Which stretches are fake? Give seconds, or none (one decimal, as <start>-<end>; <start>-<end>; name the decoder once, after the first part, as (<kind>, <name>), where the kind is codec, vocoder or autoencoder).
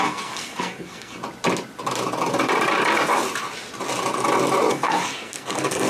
0.0-1.2 (codec, SNAC); 4.7-5.9